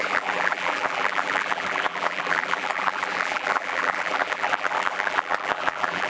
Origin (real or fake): fake